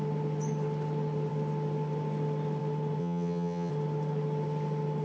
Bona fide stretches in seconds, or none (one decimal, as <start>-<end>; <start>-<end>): 0.0-3.0; 3.7-5.0